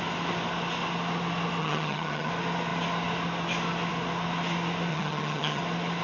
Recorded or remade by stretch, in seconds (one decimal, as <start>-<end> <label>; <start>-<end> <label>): 0.0-1.6 recorded; 1.6-2.3 remade; 2.3-4.9 recorded; 4.9-5.6 remade; 5.6-6.0 recorded